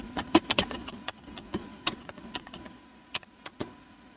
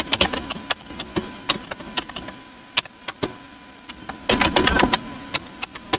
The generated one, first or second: first